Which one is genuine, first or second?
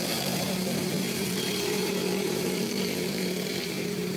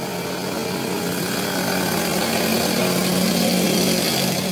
second